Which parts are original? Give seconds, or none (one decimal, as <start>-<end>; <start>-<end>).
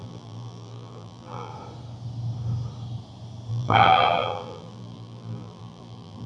1.5-3.5